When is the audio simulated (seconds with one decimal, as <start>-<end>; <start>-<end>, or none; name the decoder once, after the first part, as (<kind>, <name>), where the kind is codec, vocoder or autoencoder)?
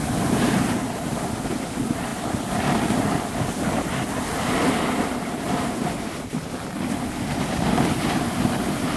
none